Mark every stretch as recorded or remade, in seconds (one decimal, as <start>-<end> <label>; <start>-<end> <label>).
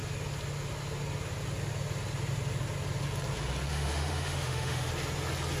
0.0-3.7 recorded; 3.7-4.9 remade; 4.9-5.6 recorded